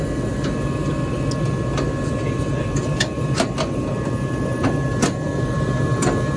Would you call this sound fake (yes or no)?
no